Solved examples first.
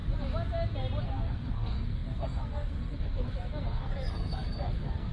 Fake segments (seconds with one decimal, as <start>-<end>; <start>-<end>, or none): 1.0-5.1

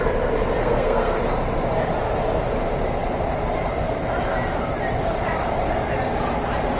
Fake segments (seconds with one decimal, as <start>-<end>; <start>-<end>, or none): 0.6-1.2

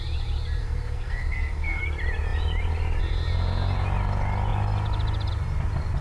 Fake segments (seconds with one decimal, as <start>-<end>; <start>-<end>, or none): 0.6-1.8